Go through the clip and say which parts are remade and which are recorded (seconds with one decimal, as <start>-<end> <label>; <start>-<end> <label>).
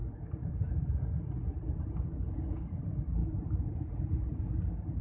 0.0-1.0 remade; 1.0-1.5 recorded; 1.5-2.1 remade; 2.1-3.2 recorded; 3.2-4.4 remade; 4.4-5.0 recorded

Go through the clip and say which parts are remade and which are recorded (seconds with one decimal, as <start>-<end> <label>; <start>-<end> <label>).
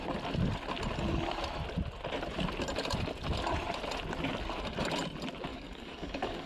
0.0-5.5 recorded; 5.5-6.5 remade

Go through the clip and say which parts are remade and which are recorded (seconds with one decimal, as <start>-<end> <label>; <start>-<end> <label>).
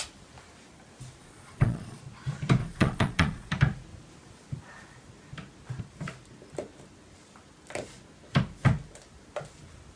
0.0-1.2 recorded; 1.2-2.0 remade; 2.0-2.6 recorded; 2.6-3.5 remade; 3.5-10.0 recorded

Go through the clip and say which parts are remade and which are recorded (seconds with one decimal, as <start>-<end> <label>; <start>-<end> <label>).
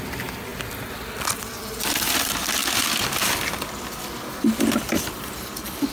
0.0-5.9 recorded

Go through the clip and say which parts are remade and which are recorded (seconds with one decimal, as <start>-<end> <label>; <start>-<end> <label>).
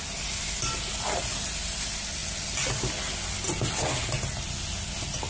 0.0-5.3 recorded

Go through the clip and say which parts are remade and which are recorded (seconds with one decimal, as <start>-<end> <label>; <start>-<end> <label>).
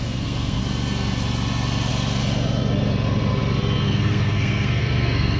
0.0-0.6 remade; 0.6-3.8 recorded; 3.8-5.4 remade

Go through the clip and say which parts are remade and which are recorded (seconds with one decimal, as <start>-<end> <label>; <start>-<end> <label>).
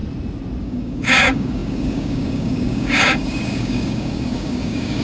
0.0-0.6 recorded; 0.6-5.0 remade